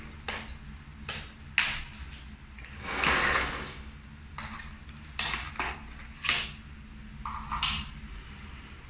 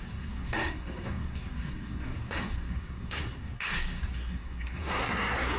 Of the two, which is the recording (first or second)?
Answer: first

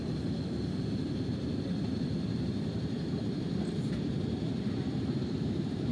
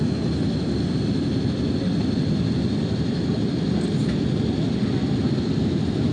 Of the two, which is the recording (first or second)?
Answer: second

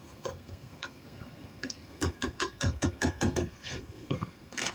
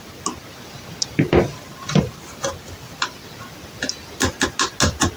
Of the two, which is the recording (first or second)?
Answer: second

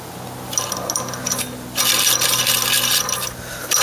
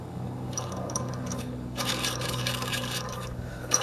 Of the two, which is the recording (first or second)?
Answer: first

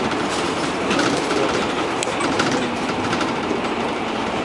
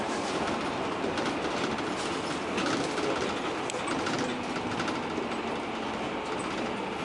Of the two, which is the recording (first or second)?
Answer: second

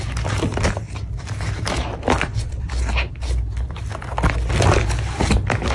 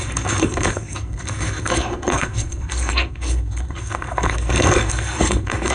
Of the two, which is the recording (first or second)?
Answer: first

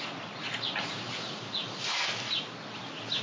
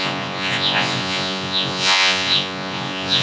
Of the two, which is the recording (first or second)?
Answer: first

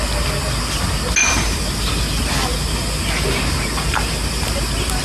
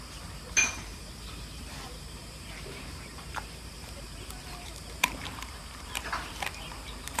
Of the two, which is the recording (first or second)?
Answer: first